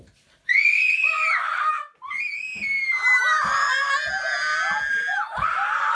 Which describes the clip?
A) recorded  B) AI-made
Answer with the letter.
A